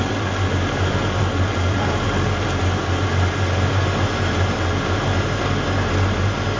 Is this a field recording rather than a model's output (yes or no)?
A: yes